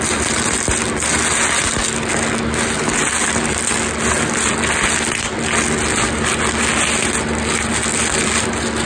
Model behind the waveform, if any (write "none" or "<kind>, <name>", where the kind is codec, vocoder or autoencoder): none